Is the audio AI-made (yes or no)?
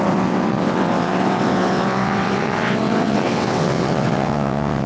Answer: yes